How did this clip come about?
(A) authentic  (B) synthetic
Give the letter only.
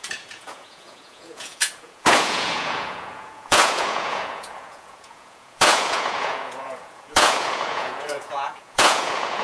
B